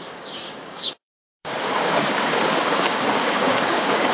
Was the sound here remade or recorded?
remade